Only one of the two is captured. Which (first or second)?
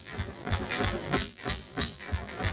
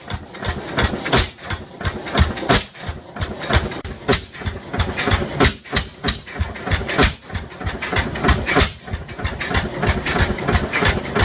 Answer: second